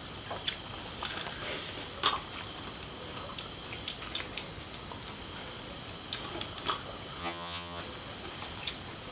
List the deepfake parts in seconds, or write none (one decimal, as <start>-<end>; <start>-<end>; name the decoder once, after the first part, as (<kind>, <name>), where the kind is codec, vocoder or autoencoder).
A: 7.2-7.8 (vocoder, HiFi-GAN)